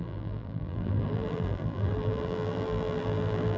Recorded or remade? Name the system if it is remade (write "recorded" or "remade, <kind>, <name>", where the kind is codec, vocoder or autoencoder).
remade, vocoder, BigVGAN v2